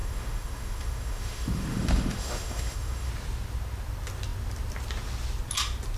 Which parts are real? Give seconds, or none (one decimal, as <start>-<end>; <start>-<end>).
3.1-6.0